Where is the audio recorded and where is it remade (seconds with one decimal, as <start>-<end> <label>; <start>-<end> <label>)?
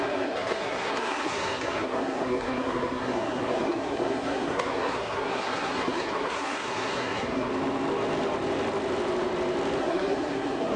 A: 0.0-7.5 remade; 7.5-9.8 recorded; 9.8-10.8 remade